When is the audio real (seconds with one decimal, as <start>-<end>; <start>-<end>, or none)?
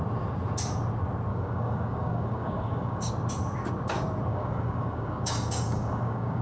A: 0.0-1.3; 3.1-4.3